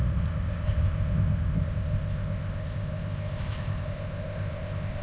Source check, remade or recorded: remade